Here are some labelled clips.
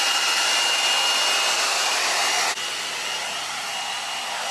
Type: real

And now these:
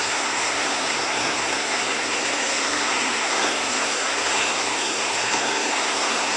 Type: fake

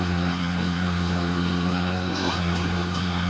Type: fake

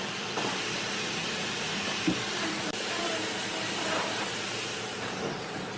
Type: fake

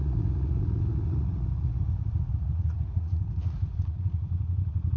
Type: fake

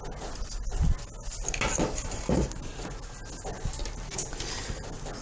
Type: real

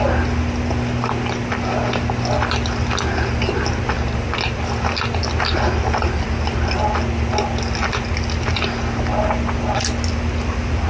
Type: real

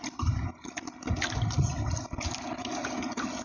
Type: real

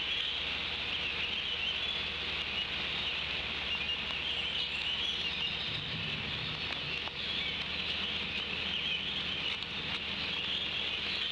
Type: real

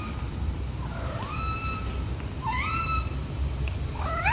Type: fake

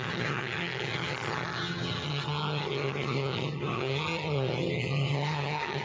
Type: fake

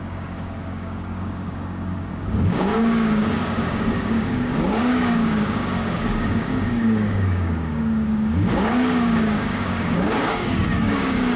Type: fake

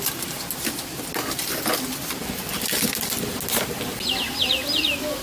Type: real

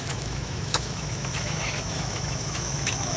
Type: fake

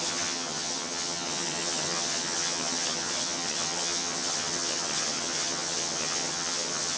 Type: fake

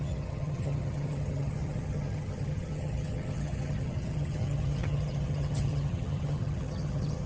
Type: fake